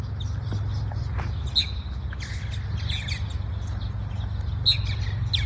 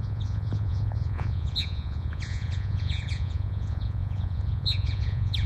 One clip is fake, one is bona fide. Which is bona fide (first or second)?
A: first